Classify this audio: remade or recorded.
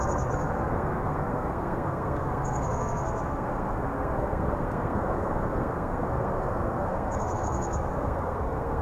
remade